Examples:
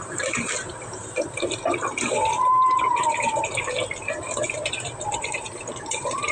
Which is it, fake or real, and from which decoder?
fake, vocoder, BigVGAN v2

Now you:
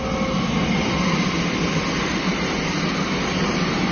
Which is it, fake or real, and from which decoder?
real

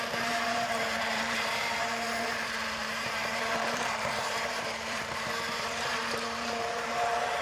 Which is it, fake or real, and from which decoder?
fake, vocoder, BigVGAN v2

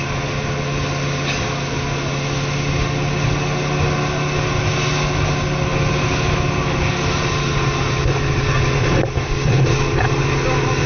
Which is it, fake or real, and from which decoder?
real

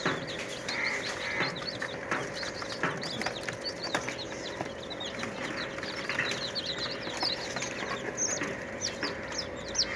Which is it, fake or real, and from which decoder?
real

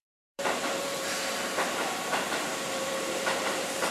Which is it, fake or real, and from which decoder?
fake, vocoder, BigVGAN v2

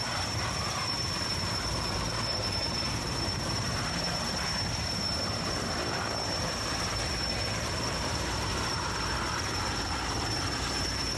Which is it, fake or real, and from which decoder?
fake, vocoder, BigVGAN v2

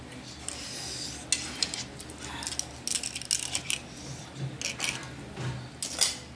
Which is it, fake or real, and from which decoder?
real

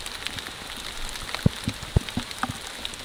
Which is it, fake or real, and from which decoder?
real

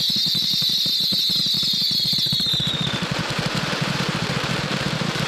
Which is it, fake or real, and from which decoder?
fake, vocoder, BigVGAN v2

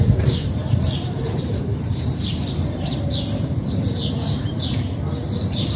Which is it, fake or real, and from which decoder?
fake, vocoder, BigVGAN v2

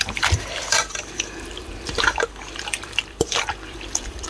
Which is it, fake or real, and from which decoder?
fake, vocoder, BigVGAN v2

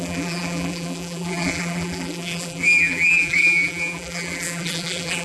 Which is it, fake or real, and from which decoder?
fake, vocoder, BigVGAN v2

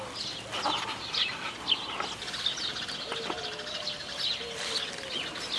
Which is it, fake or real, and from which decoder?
real